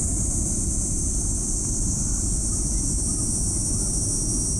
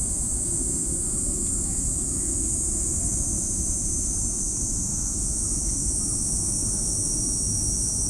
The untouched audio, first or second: first